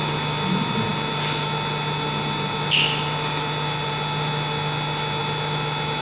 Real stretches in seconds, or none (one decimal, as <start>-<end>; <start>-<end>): 0.0-6.0